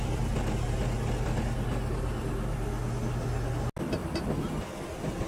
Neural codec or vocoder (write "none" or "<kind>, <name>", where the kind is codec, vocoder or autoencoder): none